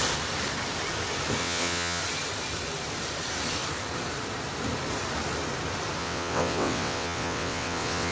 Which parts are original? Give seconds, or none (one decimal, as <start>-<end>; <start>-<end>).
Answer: 0.0-1.4; 2.0-6.0